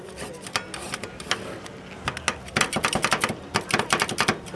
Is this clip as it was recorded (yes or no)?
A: yes